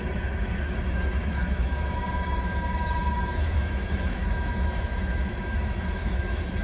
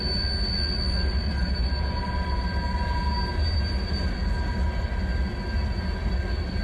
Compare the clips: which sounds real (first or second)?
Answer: second